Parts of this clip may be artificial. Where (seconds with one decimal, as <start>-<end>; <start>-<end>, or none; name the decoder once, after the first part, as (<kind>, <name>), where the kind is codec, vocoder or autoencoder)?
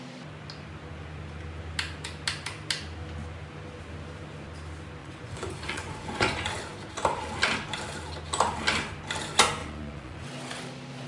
5.0-6.6 (vocoder, Vocos); 9.6-10.3